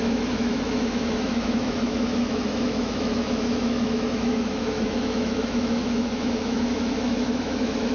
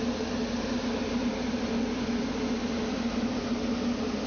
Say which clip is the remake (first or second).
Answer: first